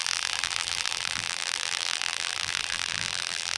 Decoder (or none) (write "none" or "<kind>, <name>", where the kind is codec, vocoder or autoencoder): vocoder, BigVGAN v2